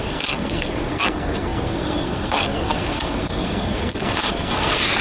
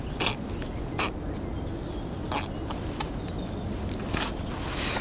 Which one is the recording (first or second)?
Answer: second